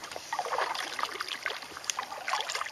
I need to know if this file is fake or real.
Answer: fake